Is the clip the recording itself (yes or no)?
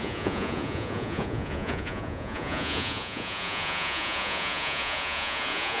no